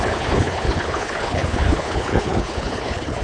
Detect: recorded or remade remade